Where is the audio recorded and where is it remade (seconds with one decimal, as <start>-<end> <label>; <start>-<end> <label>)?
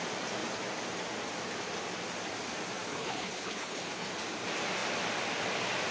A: 0.0-2.9 recorded; 2.9-4.1 remade; 4.1-5.9 recorded